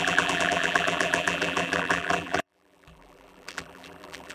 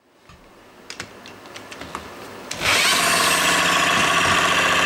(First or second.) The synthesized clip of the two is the first